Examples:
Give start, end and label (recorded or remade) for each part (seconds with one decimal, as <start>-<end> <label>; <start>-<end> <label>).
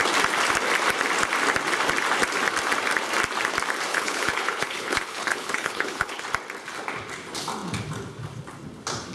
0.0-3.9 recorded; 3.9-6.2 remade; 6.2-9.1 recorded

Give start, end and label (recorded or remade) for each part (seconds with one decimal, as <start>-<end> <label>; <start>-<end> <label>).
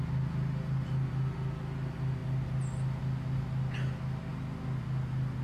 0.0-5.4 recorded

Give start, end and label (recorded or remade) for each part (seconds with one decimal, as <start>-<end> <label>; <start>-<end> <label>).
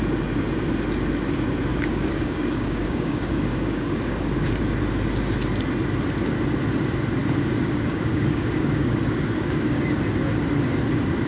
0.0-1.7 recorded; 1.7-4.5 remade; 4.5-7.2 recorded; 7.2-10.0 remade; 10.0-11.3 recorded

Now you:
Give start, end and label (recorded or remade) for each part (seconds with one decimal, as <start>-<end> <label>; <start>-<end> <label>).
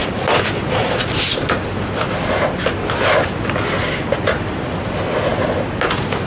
0.0-6.3 recorded